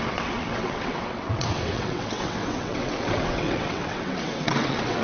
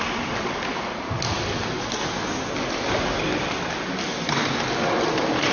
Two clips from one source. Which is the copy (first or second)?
first